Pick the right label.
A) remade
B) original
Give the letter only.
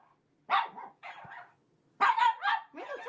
B